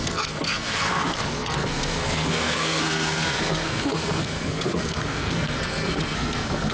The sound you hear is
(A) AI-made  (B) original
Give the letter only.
A